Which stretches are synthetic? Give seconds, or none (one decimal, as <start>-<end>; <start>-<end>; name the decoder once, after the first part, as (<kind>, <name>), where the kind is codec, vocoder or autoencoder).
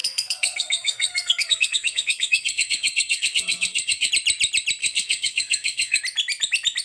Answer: 0.0-4.1 (codec, SNAC); 4.8-6.0